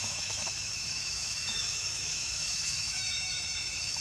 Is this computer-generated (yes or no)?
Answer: yes